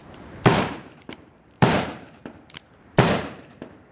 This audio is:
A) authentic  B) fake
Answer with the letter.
B